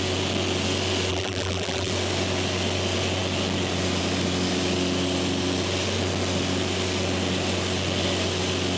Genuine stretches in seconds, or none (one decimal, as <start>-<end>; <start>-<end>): 0.0-1.1; 1.9-8.8